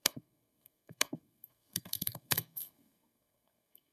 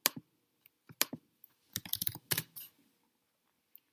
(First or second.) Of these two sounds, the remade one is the first